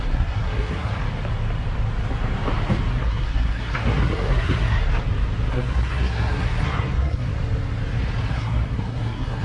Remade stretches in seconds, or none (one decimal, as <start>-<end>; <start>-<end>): 0.0-0.9; 2.9-4.9; 5.5-7.3; 8.3-9.4